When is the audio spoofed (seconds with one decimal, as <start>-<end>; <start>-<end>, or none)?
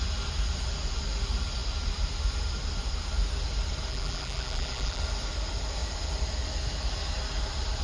3.9-5.0